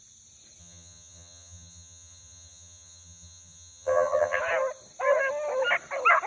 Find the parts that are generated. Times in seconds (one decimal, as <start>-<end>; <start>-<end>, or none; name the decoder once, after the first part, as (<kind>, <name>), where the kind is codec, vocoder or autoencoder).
0.6-4.4 (vocoder, HiFi-GAN)